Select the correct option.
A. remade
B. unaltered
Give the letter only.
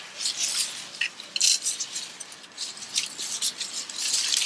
B